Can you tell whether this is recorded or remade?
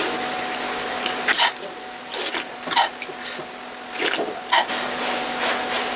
recorded